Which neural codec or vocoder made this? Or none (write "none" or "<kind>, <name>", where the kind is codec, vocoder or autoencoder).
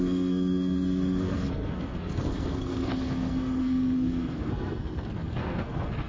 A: codec, SNAC